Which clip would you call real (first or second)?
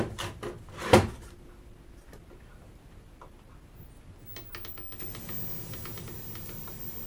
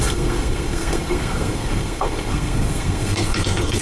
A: first